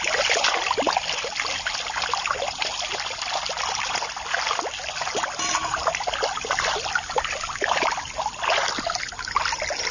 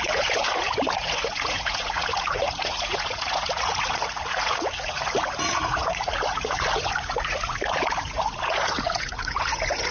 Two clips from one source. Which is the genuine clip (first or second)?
first